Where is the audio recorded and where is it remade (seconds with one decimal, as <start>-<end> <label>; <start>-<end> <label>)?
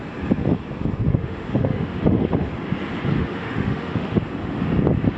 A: 0.0-1.1 recorded; 1.1-2.5 remade; 2.5-3.2 recorded; 3.2-4.2 remade; 4.2-5.2 recorded